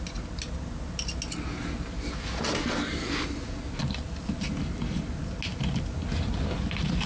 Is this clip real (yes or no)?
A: yes